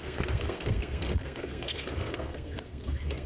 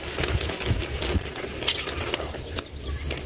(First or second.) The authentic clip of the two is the second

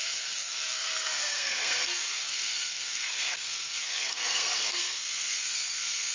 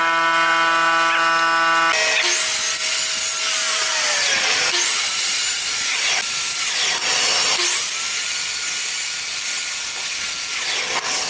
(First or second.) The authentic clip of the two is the second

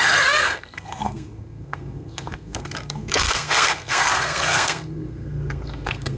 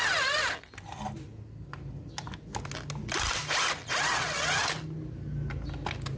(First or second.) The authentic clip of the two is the second